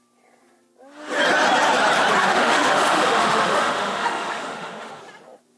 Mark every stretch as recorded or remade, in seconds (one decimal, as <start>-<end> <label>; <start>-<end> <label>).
0.0-2.2 recorded; 2.2-5.0 remade; 5.0-5.6 recorded